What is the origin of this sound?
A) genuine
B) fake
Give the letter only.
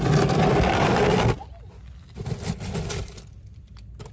B